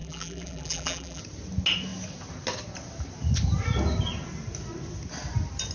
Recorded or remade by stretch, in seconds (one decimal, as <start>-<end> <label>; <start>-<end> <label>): 0.0-1.2 remade; 1.2-5.7 recorded